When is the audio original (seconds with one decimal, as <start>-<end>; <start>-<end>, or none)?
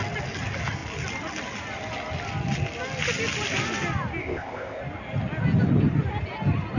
0.0-4.2; 4.8-6.8